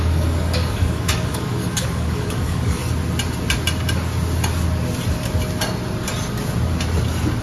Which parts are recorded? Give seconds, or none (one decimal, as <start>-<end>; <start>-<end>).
2.8-7.4